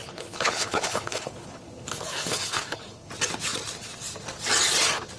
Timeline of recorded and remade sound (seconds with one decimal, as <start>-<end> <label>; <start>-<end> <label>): 0.0-3.1 remade; 3.1-5.2 recorded